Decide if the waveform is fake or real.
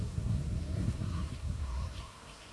fake